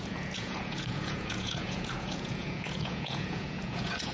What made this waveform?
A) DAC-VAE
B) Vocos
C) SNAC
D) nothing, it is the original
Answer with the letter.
B